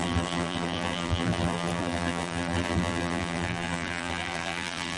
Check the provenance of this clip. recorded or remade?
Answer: remade